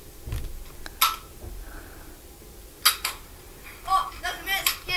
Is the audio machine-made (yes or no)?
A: no